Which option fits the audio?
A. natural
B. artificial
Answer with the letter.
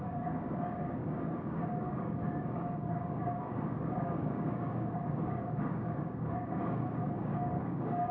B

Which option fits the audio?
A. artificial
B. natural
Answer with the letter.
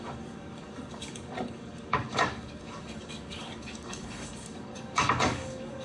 A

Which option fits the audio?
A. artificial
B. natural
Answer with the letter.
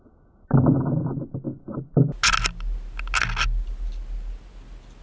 B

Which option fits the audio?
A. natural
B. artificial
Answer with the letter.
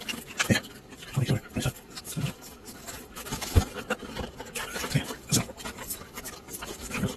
B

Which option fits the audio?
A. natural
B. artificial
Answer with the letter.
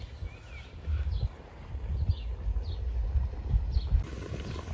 A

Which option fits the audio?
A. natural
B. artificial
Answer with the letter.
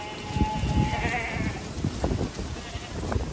A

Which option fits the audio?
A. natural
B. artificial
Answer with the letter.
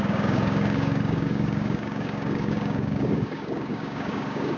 B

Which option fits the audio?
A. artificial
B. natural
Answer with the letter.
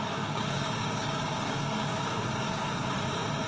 A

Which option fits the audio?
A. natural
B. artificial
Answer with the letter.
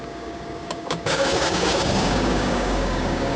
B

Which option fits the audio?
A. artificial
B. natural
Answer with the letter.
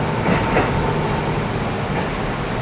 B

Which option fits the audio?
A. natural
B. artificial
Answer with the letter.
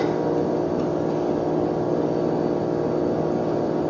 A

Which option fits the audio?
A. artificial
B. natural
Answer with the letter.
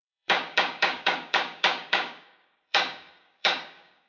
A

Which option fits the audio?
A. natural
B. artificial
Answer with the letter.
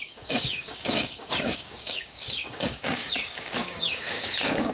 B